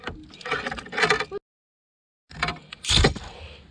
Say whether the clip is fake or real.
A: real